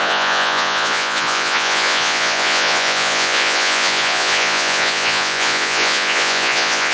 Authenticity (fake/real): fake